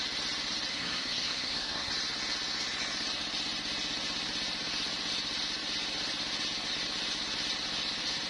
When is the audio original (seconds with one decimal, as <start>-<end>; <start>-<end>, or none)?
0.0-0.7; 1.9-8.3